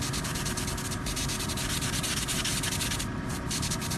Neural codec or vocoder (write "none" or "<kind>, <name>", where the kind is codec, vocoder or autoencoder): none